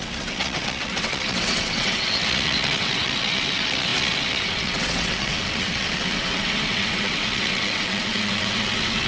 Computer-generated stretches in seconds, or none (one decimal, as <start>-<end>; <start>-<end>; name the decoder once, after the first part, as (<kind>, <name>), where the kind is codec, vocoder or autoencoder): 0.0-9.1 (vocoder, WaveNeXt)